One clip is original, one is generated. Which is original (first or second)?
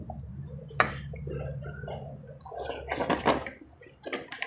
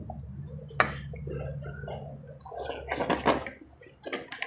second